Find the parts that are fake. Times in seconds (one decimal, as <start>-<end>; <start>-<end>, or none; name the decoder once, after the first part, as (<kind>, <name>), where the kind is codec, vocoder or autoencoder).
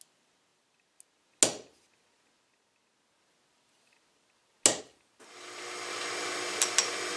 none